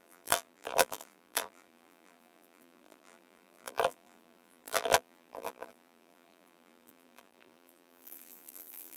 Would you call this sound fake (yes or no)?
yes